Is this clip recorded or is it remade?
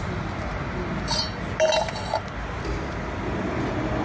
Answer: recorded